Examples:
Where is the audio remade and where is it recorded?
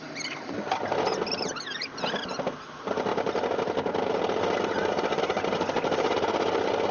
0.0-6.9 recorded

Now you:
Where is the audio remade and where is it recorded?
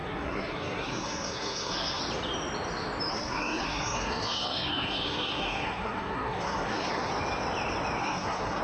0.0-2.0 remade; 2.0-3.1 recorded; 3.1-7.1 remade; 7.1-8.0 recorded; 8.0-8.6 remade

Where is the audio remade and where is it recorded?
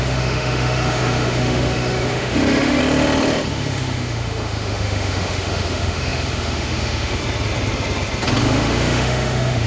0.0-2.8 remade; 2.8-3.5 recorded; 3.5-7.2 remade; 7.2-8.4 recorded; 8.4-9.7 remade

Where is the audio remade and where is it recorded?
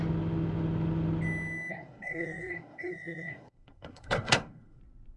0.0-1.7 recorded; 1.7-4.8 remade; 4.8-5.2 recorded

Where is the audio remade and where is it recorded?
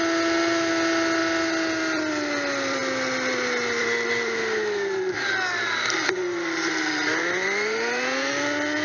0.0-8.8 recorded